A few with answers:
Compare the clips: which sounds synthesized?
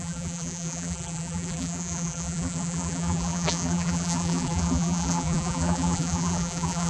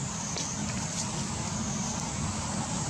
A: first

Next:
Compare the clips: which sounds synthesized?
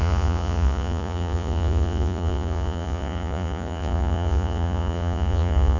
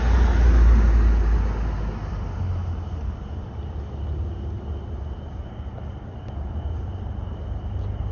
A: first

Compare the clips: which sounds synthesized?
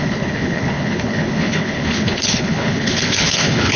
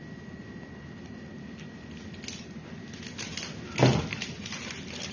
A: first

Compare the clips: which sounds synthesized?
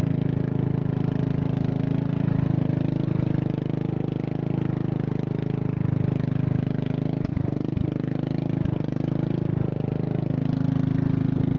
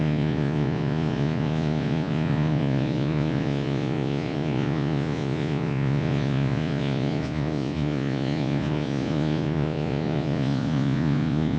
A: second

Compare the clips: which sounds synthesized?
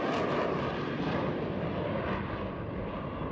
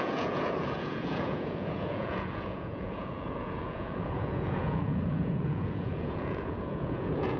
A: second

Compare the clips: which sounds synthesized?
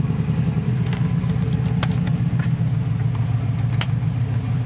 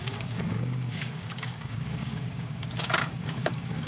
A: second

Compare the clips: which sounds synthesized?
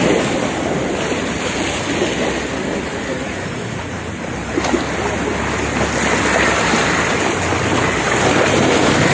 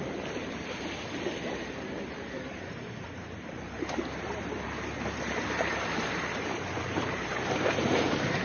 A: second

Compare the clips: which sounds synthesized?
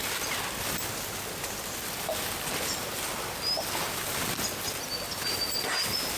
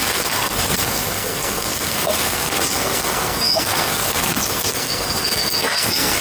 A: second